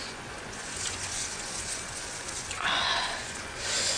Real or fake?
fake